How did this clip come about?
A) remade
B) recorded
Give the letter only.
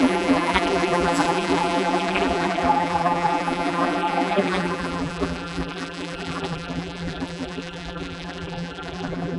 A